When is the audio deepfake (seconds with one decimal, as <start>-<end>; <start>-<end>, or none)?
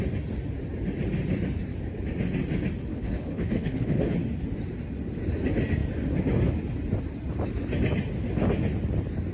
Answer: 2.9-4.1